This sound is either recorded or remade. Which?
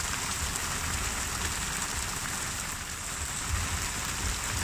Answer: recorded